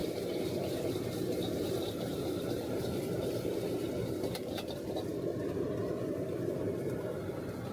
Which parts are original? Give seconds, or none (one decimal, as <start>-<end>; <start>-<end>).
1.6-2.1; 3.7-7.7